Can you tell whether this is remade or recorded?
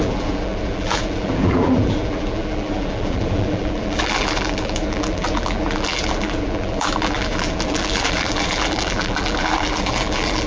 remade